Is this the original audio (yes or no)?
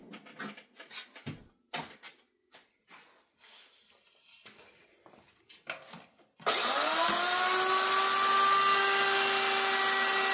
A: yes